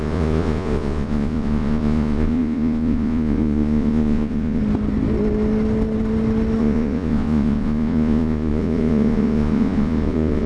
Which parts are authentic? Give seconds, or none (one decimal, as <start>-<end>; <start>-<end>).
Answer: 4.6-6.6